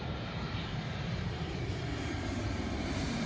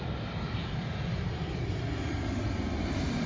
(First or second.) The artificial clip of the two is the first